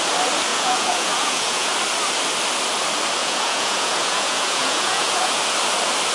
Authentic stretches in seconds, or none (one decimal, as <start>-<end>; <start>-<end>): 0.0-0.5; 1.7-3.2; 5.4-6.1